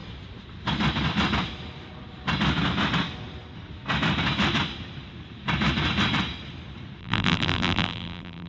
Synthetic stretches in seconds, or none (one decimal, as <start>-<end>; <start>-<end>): 7.0-8.5